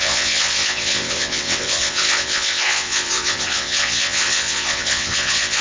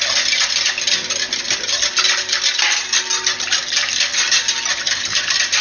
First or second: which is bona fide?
second